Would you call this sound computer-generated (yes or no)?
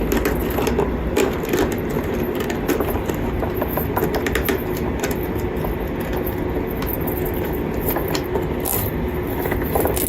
no